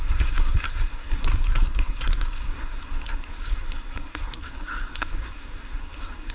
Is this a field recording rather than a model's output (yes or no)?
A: no